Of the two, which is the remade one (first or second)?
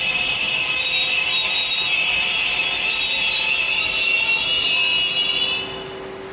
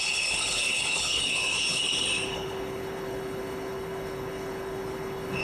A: second